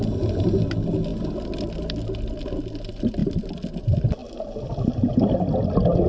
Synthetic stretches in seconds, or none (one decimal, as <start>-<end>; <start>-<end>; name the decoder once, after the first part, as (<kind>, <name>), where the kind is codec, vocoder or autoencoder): none